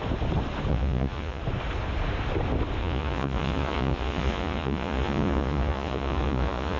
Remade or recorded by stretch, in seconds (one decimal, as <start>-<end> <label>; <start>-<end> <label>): 0.0-0.7 recorded; 0.7-1.4 remade; 1.4-2.8 recorded; 2.8-6.8 remade